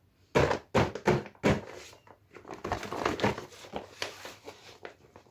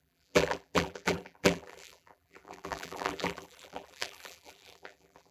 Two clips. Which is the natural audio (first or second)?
first